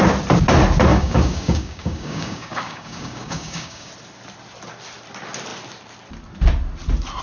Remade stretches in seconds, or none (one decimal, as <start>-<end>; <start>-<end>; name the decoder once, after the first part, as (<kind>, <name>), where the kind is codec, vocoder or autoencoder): 0.9-3.9 (codec, DAC)